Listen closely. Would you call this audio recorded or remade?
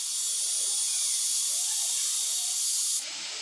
recorded